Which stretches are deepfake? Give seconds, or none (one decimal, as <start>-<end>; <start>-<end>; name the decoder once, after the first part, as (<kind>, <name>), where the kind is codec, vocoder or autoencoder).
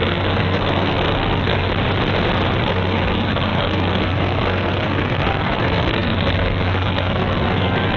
0.0-1.7 (codec, SNAC); 2.6-8.0